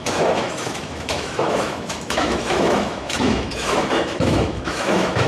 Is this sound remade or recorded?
remade